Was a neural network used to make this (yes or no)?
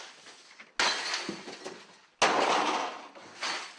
no